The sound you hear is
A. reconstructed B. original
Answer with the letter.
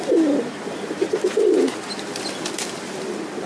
B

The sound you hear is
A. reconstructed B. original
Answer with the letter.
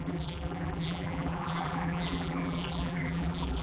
A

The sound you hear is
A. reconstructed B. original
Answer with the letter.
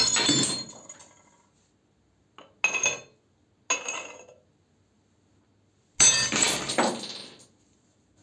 B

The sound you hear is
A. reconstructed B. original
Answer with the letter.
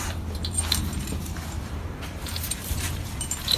A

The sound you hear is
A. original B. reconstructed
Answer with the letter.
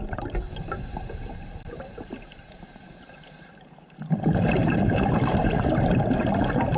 B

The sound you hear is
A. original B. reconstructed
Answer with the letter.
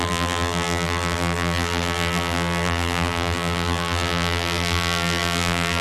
B